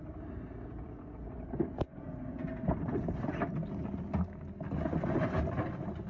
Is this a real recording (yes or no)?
yes